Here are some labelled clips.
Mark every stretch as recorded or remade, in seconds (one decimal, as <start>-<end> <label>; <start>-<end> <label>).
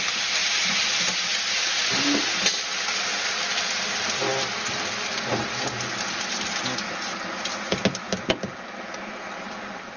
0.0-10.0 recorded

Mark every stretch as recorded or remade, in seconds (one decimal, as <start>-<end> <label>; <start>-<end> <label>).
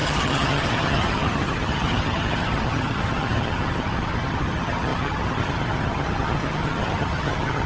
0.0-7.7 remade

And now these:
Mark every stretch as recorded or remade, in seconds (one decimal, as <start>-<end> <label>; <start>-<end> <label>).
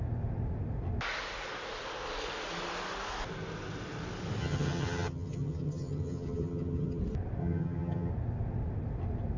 0.0-4.4 recorded; 4.4-7.0 remade; 7.0-7.4 recorded; 7.4-8.1 remade; 8.1-9.4 recorded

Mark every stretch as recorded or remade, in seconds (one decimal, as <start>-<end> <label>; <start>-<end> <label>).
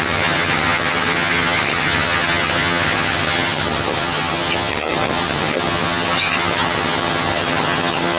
0.0-8.2 remade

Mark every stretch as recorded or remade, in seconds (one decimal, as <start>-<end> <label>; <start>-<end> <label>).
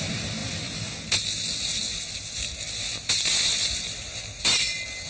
0.0-5.1 recorded